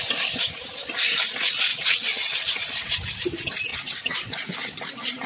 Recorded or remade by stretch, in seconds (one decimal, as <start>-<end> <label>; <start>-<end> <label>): 0.0-1.7 recorded; 1.7-2.9 remade; 2.9-3.7 recorded; 3.7-4.3 remade; 4.3-5.3 recorded